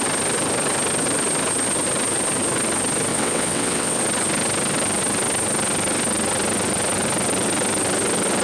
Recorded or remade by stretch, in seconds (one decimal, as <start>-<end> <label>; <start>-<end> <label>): 0.0-3.1 recorded; 3.1-4.0 remade; 4.0-8.4 recorded